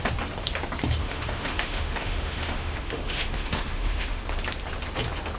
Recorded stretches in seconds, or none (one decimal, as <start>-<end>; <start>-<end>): 0.0-1.0; 4.2-5.4